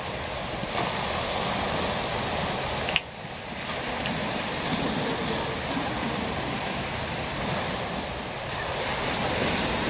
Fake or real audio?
real